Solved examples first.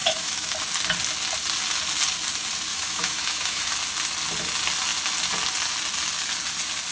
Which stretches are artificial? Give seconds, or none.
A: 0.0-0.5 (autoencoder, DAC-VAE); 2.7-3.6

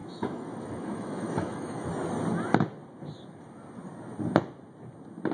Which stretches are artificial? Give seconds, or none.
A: 0.0-1.9 (autoencoder, DAC-VAE)

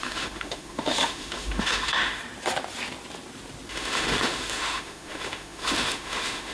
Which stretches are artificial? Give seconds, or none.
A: 0.0-2.2 (autoencoder, DAC-VAE); 3.7-6.5

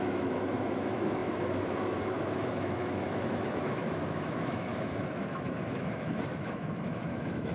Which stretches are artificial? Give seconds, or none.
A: 0.0-7.5 (autoencoder, DAC-VAE)

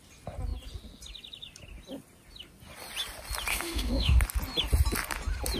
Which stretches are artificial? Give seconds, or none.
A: 3.5-4.2 (autoencoder, DAC-VAE)